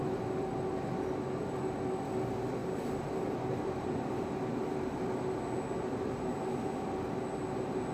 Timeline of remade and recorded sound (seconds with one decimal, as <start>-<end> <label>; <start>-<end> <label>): 0.0-2.6 recorded; 2.6-4.3 remade; 4.3-7.9 recorded